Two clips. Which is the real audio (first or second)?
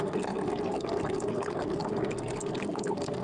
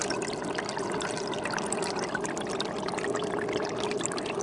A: second